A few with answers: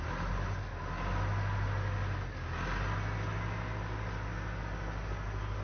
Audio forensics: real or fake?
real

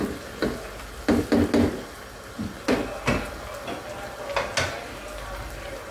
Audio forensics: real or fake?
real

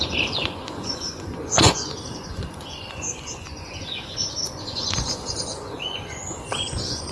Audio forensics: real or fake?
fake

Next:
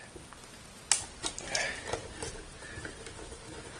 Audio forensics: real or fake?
real